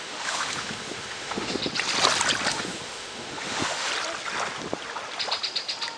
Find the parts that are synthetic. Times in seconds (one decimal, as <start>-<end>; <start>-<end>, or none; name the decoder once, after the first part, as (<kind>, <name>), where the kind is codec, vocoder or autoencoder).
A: 0.0-1.6 (autoencoder, DAC-VAE); 2.5-3.9